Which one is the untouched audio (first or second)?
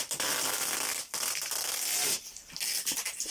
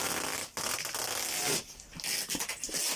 second